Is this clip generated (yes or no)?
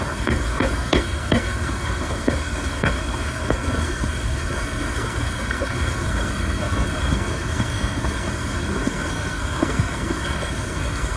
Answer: yes